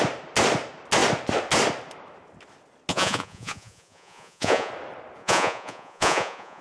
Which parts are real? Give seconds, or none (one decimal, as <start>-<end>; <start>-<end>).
0.0-2.9; 4.7-5.2